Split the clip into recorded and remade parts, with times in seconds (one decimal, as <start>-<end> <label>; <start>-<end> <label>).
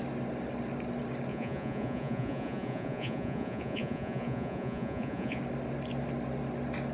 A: 0.0-1.3 recorded; 1.3-5.4 remade; 5.4-6.9 recorded